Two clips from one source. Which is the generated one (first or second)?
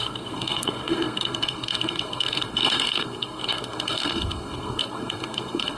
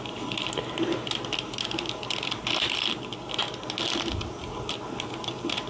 first